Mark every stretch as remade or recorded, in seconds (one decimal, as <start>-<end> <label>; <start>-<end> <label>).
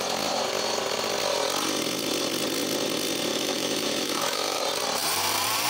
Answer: 0.0-3.3 recorded; 3.3-4.6 remade; 4.6-5.7 recorded